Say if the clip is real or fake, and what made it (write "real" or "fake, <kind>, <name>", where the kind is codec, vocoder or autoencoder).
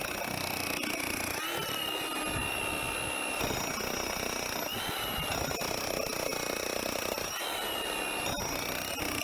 real